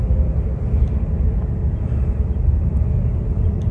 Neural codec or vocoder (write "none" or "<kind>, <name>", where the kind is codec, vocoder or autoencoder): none